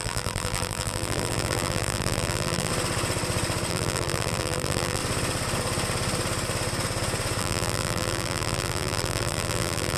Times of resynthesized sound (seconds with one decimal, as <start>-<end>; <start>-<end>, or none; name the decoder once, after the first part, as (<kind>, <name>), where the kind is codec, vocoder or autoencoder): 0.0-2.7 (vocoder, BigVGAN v2); 3.7-5.0; 7.4-10.0